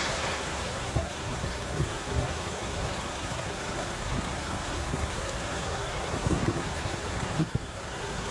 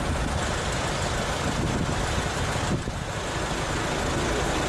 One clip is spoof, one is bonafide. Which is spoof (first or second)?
first